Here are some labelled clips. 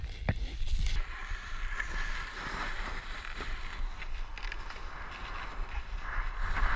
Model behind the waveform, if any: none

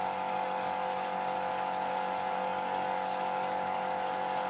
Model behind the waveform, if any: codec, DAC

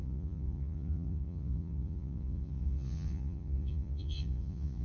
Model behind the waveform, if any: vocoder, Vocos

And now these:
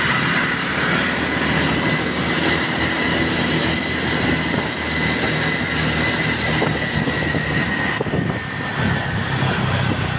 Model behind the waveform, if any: none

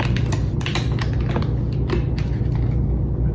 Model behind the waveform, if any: none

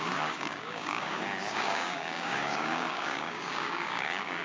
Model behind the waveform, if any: codec, DAC